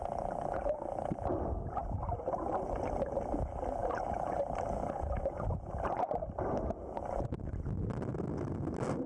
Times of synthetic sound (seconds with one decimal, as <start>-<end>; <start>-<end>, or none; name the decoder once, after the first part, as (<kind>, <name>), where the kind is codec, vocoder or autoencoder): none